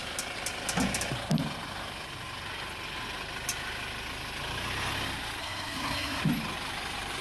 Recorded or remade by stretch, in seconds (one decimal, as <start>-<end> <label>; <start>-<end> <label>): 0.0-5.4 recorded; 5.4-6.2 remade; 6.2-7.2 recorded